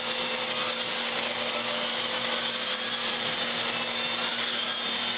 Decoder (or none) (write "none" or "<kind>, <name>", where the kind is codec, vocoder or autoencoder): none